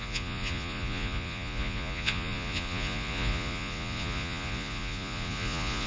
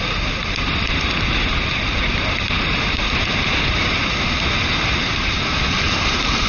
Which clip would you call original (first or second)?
second